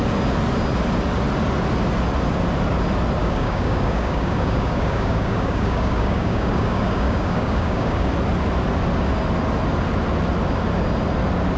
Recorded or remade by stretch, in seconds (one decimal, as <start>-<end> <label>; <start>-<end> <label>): 0.0-3.2 recorded; 3.2-8.1 remade; 8.1-11.6 recorded

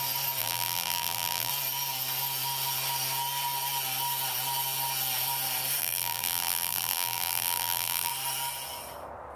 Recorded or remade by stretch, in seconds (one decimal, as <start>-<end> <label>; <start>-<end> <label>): 0.0-0.4 recorded; 0.4-1.5 remade; 1.5-5.8 recorded; 5.8-8.1 remade; 8.1-9.4 recorded

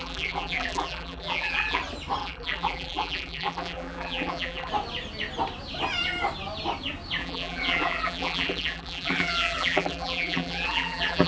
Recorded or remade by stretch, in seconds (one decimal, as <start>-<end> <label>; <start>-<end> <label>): 0.0-1.8 remade; 1.8-2.2 recorded; 2.2-4.7 remade; 4.7-7.2 recorded; 7.2-11.3 remade

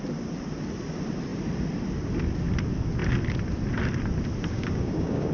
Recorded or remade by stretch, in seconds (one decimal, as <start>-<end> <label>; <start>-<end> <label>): 0.0-4.5 recorded; 4.5-5.3 remade

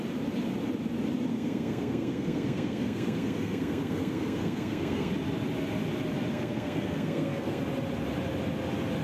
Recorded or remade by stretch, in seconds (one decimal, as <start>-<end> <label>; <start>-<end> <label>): 0.0-1.3 recorded; 1.3-5.1 remade; 5.1-6.3 recorded; 6.3-7.6 remade; 7.6-9.0 recorded